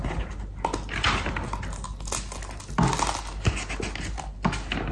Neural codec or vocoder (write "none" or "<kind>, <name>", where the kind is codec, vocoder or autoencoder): none